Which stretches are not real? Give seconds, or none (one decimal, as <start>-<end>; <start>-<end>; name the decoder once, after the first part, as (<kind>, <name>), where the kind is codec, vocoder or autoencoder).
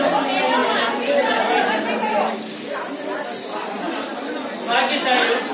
none